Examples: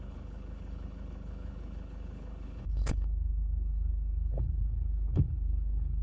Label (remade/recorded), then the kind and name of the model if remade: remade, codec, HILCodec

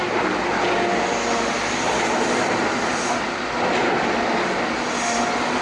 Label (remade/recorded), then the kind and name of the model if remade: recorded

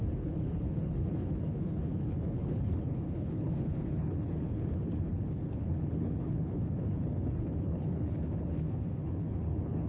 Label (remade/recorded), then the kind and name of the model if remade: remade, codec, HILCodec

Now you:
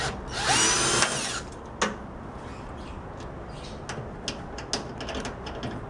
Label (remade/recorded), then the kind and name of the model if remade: recorded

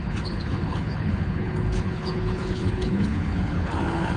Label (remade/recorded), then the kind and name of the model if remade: remade, codec, HILCodec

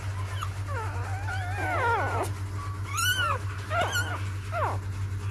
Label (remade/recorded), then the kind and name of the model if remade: recorded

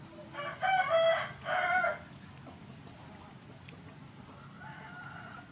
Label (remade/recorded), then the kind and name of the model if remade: recorded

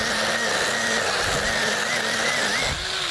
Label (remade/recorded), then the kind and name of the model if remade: recorded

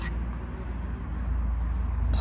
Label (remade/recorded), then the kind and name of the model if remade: recorded